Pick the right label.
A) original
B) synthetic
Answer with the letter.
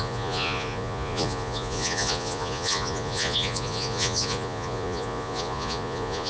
B